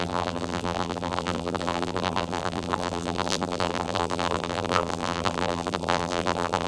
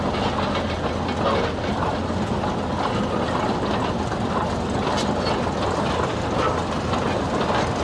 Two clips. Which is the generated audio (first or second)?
first